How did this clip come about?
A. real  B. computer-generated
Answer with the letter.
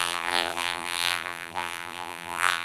B